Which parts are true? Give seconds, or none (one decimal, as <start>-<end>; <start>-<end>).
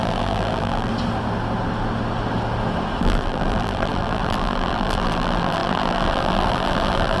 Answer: 0.9-3.0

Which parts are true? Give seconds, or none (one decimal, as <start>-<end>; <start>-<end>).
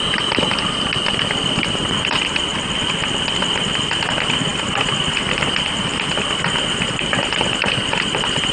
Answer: 2.5-3.8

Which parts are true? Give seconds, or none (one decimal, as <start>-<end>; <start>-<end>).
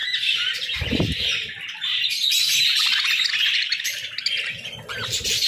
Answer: 0.0-3.3; 4.0-5.5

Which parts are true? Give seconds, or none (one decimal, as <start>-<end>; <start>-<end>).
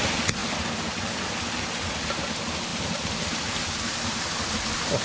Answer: 0.0-0.4; 2.0-2.7; 4.5-5.0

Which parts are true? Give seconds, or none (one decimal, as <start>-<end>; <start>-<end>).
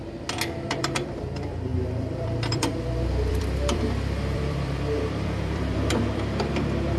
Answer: 0.0-0.7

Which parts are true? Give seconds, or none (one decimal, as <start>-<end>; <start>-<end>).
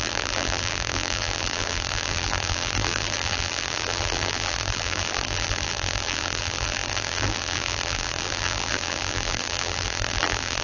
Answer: none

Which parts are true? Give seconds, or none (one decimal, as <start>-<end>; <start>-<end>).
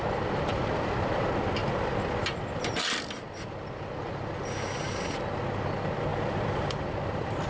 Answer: 0.0-0.5; 1.2-1.6; 3.5-6.1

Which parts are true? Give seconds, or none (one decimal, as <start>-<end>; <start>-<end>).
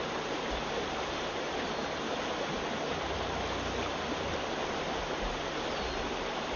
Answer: 2.2-6.6